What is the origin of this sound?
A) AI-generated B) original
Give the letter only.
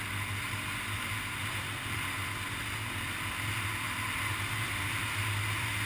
B